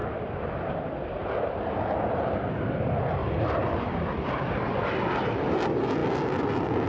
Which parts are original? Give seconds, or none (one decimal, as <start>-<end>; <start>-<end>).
0.9-3.2; 4.5-6.9